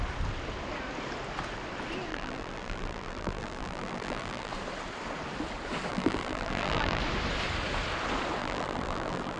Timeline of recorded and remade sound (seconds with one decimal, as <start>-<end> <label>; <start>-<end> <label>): 0.0-2.1 recorded; 2.1-4.5 remade; 4.5-5.9 recorded; 5.9-7.0 remade; 7.0-8.4 recorded; 8.4-9.4 remade